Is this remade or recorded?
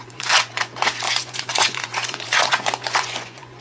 remade